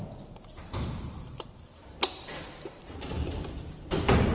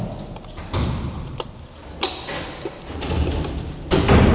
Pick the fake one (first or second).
first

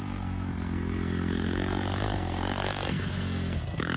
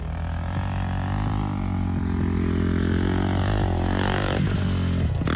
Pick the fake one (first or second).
first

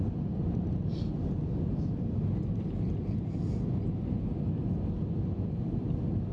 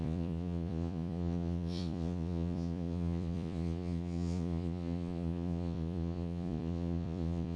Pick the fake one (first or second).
second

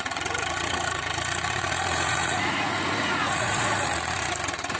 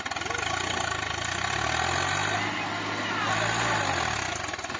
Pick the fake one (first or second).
first